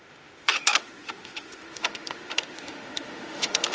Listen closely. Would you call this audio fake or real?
fake